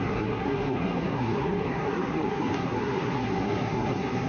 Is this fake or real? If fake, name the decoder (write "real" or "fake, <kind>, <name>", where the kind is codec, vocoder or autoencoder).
fake, codec, SNAC